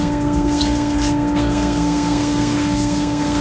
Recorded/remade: remade